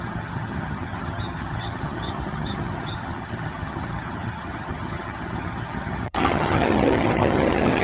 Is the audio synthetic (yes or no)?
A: yes